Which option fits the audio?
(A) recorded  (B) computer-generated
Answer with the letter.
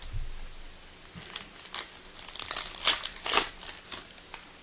A